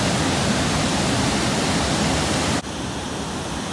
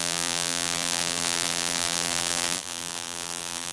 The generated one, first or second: second